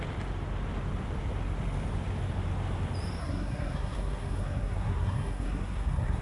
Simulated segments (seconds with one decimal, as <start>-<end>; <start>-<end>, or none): 3.2-6.2